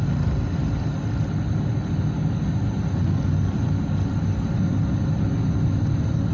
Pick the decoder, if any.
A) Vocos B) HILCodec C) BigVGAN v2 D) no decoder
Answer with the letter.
D